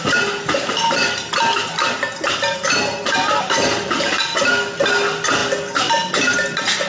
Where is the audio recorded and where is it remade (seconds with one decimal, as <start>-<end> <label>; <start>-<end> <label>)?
0.0-6.9 recorded